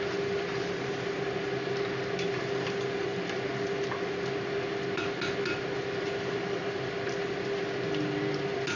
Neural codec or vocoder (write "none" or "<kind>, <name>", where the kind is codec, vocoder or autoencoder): none